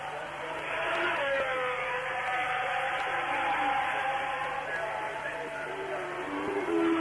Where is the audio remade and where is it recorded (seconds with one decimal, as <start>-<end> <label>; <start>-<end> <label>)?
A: 0.0-3.1 remade; 3.1-3.8 recorded; 3.8-4.4 remade; 4.4-5.1 recorded; 5.1-7.0 remade